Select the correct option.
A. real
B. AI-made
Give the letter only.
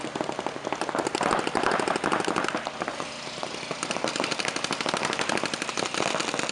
A